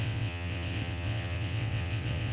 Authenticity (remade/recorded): remade